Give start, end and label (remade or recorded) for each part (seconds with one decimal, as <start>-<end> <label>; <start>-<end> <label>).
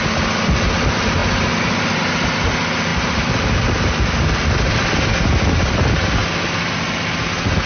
0.0-2.9 recorded; 2.9-5.0 remade; 5.0-7.7 recorded